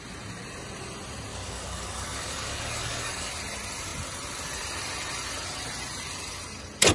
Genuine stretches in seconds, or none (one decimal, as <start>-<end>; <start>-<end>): 0.0-1.3; 3.3-6.9